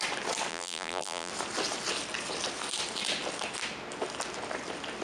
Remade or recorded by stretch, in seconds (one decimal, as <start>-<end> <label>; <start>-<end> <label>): 0.0-0.5 recorded; 0.5-1.3 remade; 1.3-5.0 recorded